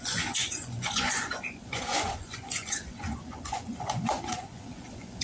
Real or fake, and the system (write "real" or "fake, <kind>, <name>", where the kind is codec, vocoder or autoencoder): fake, vocoder, Vocos